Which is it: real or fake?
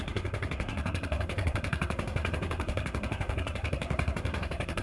fake